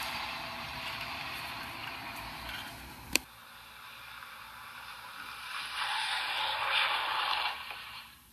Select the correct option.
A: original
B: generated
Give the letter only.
B